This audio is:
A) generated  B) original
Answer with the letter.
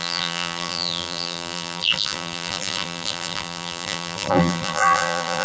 A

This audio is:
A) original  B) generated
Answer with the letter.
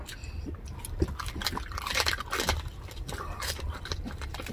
B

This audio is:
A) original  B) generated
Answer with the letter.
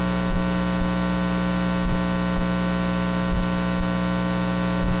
A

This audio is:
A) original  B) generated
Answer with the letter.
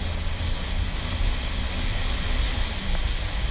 A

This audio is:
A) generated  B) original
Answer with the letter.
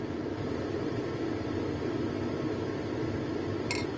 B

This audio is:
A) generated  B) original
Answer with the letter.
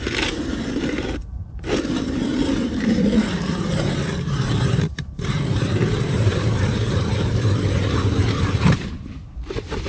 A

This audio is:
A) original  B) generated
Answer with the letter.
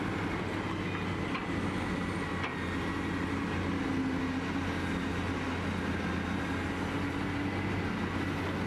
A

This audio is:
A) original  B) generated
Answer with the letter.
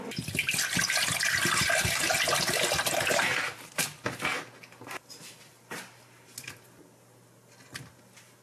A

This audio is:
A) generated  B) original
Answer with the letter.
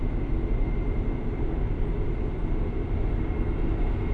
B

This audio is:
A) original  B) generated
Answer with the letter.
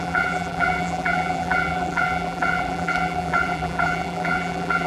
B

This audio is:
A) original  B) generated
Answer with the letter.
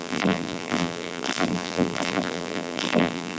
B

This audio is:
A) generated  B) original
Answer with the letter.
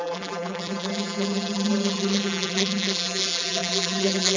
A